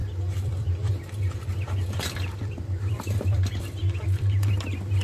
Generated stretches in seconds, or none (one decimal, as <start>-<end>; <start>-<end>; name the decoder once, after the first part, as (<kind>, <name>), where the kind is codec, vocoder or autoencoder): 0.0-0.9 (vocoder, BigVGAN v2); 1.5-4.5